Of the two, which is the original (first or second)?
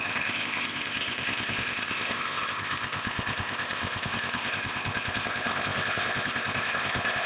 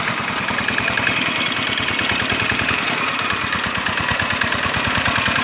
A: second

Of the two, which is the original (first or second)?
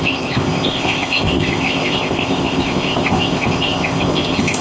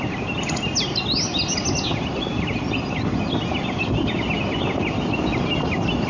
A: second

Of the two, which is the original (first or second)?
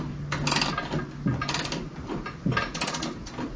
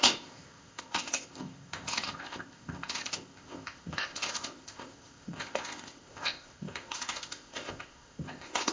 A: first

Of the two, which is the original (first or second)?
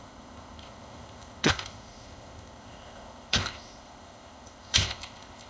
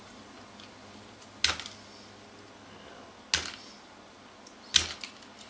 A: second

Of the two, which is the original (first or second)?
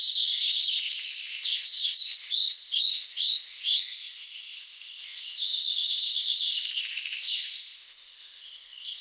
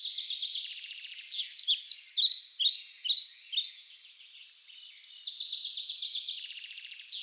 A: second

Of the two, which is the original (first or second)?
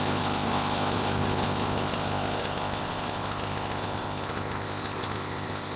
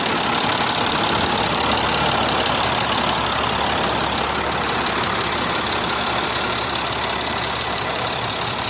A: second